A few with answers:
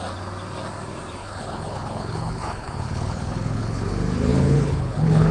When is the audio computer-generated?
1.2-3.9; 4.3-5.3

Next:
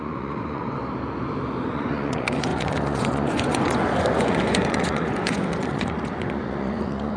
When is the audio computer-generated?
0.0-0.8; 1.7-7.2

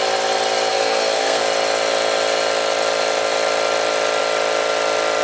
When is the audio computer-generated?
0.7-1.4

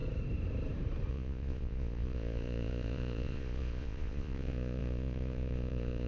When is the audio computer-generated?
1.1-6.1

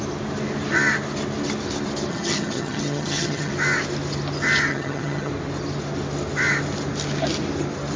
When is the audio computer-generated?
2.1-3.5; 4.7-5.3